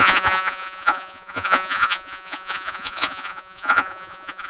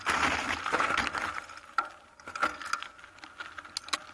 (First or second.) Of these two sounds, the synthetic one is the first